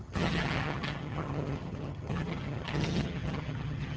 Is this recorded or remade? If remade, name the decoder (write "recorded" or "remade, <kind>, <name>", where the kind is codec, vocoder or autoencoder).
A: remade, vocoder, HiFi-GAN